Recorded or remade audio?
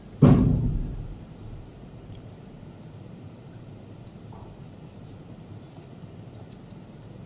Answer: remade